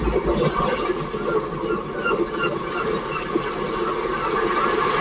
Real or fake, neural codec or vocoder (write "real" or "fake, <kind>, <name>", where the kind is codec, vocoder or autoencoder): real